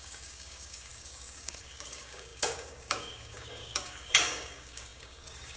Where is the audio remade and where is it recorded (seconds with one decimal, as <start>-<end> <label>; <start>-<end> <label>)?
0.0-5.6 remade